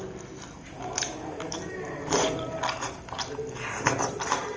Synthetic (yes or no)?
no